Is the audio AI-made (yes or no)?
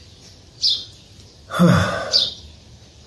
yes